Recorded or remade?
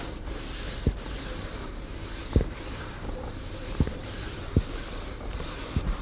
remade